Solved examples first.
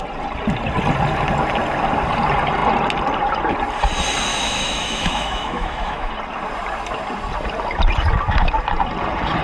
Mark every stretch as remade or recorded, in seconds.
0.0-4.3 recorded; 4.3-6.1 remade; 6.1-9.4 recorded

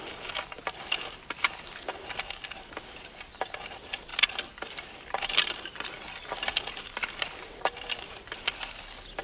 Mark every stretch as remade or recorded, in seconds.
0.0-9.2 recorded